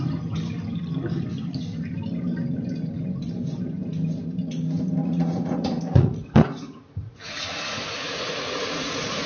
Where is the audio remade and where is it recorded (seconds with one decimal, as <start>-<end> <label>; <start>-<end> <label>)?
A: 0.0-5.0 recorded; 5.0-9.3 remade